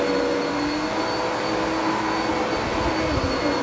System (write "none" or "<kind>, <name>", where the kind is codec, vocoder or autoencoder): none